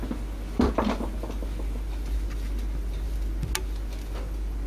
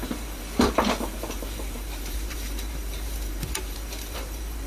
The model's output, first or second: second